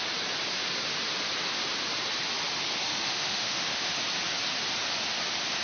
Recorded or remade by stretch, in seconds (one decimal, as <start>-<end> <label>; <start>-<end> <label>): 0.0-2.9 recorded; 2.9-4.0 remade; 4.0-5.6 recorded